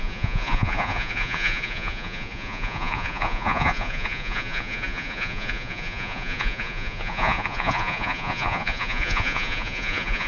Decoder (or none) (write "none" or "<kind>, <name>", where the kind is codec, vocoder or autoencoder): vocoder, Vocos